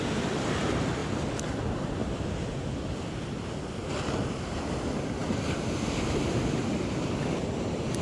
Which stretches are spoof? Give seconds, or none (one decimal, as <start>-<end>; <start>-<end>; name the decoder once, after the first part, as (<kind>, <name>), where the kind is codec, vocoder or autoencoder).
none